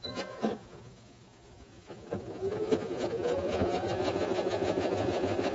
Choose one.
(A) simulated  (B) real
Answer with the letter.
A